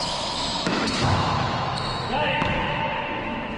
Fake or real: fake